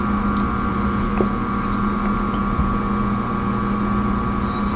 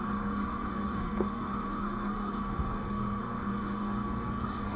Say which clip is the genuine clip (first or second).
first